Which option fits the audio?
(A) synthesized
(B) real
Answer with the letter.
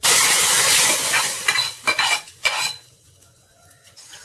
A